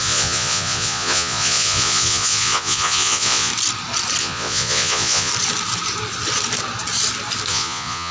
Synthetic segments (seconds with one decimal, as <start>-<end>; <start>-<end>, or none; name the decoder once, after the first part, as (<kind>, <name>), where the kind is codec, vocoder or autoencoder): 0.0-3.5 (vocoder, Vocos); 4.2-5.3; 7.5-8.1